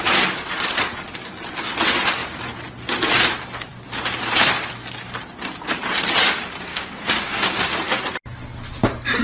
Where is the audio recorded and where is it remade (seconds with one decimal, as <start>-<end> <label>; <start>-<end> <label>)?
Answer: 0.0-6.7 recorded; 6.7-7.7 remade; 7.7-9.2 recorded